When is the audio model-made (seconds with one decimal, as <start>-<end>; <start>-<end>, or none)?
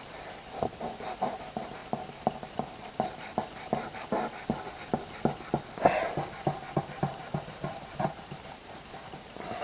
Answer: 0.0-1.8; 6.8-9.6